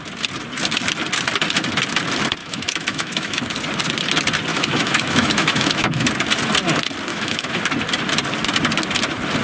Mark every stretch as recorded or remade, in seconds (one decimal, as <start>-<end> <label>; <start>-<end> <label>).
0.0-2.4 recorded; 2.4-3.4 remade; 3.4-4.5 recorded; 4.5-6.1 remade; 6.1-7.1 recorded; 7.1-7.6 remade; 7.6-9.4 recorded